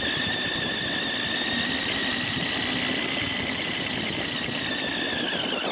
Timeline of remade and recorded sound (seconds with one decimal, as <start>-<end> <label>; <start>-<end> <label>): 0.0-2.0 recorded; 2.0-4.8 remade; 4.8-5.7 recorded